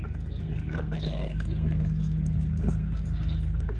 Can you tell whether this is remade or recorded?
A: remade